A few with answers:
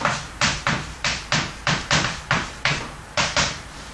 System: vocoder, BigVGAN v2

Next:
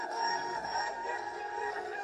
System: codec, SNAC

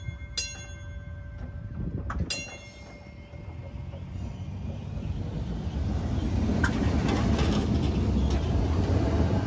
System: none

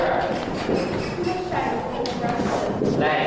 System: none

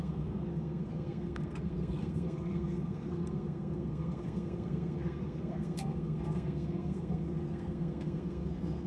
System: codec, SNAC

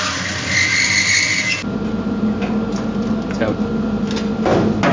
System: none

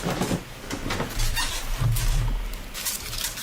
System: none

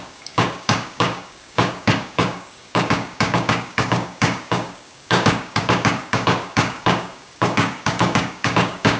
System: codec, DAC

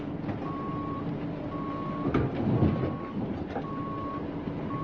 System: none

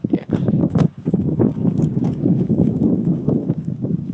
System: codec, DAC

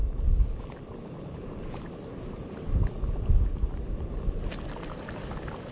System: none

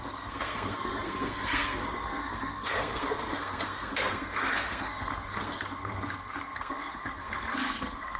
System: codec, SNAC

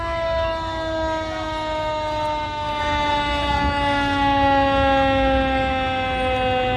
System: none